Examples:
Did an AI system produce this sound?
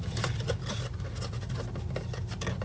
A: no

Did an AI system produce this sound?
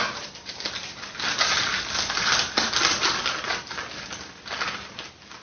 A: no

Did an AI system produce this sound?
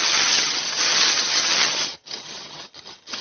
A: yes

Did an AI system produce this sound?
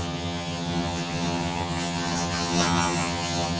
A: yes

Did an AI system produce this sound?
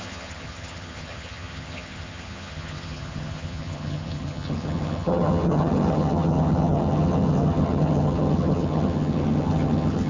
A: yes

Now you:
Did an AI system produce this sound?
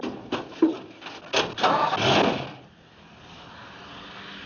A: no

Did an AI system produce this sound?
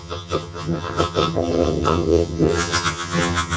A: yes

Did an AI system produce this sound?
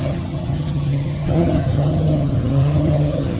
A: yes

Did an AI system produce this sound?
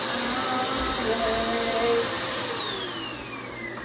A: no